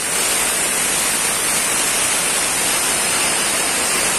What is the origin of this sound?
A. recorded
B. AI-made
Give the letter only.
A